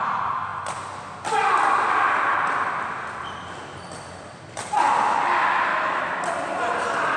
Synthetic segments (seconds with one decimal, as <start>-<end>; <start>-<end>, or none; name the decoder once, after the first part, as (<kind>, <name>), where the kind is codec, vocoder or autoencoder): 5.7-6.2 (autoencoder, DAC-VAE)